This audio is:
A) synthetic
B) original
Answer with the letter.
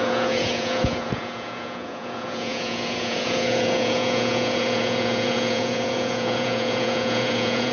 A